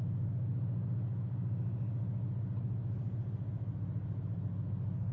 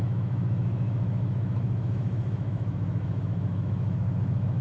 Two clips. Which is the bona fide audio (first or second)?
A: first